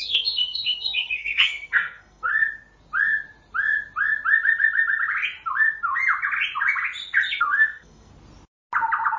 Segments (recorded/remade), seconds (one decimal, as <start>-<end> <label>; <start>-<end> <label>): 0.0-2.3 remade; 2.3-7.4 recorded; 7.4-8.1 remade; 8.1-9.2 recorded